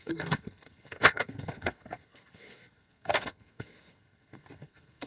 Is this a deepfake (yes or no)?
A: yes